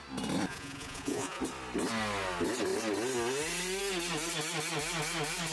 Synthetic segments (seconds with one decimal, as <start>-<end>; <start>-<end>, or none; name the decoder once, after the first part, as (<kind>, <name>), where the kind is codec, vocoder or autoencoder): 0.5-1.4 (vocoder, Vocos)